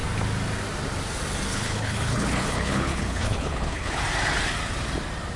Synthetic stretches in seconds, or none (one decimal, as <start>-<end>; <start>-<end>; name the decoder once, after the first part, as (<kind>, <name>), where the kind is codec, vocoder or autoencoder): 1.5-4.0 (codec, HILCodec)